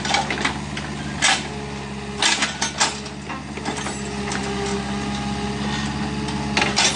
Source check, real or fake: real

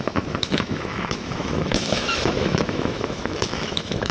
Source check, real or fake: fake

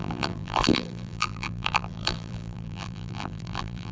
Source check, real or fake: fake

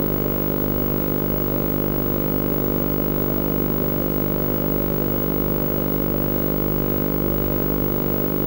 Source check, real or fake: real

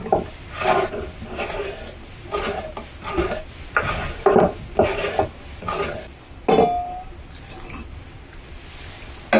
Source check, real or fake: real